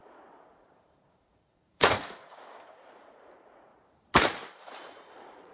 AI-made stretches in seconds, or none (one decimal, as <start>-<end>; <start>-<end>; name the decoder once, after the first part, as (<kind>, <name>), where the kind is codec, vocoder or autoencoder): 0.0-3.7 (vocoder, Vocos); 4.5-5.5